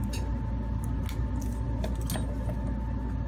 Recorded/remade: recorded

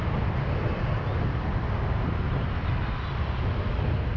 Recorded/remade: recorded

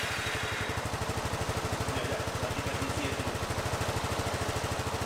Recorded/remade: recorded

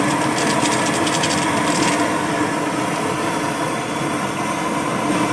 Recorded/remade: recorded